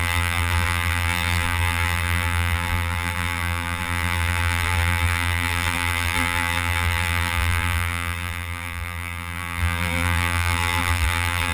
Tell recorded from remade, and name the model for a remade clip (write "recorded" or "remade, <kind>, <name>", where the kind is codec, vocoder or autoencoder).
remade, vocoder, BigVGAN v2